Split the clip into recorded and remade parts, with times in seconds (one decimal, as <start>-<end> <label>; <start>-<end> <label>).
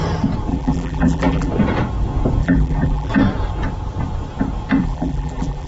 0.0-0.5 recorded; 0.5-1.5 remade; 1.5-2.4 recorded; 2.4-3.1 remade; 3.1-4.8 recorded; 4.8-5.7 remade